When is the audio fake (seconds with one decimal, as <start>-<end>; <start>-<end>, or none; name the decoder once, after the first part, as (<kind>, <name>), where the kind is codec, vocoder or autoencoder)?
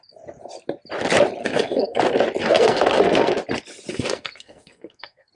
1.4-2.0 (codec, SNAC); 2.4-3.3; 3.9-5.3